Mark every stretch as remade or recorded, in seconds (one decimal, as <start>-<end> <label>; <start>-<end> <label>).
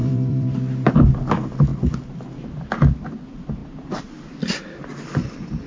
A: 0.0-0.9 remade; 0.9-1.7 recorded; 1.7-2.2 remade; 2.2-5.7 recorded